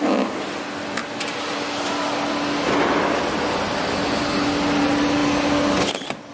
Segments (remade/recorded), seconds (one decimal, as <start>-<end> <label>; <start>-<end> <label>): 0.0-6.3 recorded